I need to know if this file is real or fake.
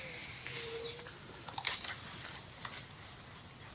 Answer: real